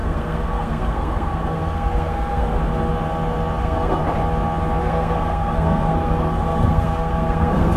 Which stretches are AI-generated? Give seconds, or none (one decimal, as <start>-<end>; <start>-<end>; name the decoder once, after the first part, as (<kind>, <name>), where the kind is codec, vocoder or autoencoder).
0.0-2.6 (codec, SNAC); 3.6-4.0; 4.8-7.8